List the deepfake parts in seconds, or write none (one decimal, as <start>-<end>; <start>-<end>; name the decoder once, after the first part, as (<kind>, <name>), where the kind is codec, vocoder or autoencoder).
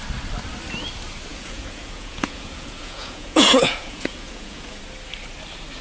1.3-4.8 (vocoder, Vocos)